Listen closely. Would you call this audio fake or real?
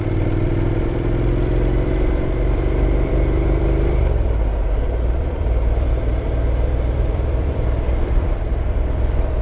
fake